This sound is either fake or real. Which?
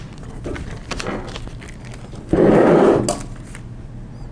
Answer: real